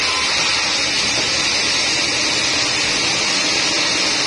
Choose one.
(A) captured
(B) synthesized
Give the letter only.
A